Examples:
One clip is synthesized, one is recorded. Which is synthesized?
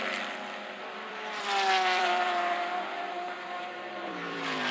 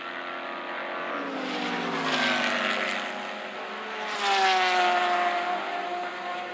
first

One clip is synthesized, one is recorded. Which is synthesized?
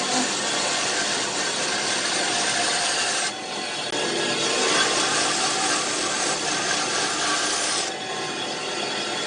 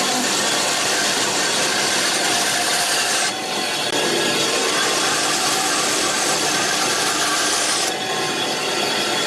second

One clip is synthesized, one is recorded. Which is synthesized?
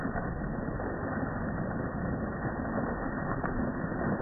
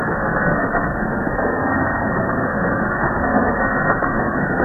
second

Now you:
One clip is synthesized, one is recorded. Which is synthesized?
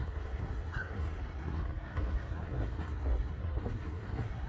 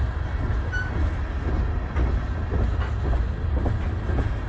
first